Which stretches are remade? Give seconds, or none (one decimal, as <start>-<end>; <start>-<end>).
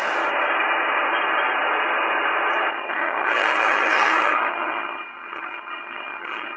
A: 2.7-6.6